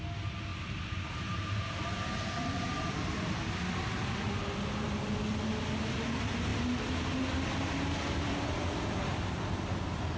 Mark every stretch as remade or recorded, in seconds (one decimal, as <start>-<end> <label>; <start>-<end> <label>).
0.0-0.5 recorded; 0.5-3.3 remade; 3.3-10.2 recorded